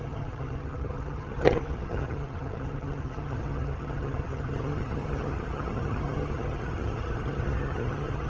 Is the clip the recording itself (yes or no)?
no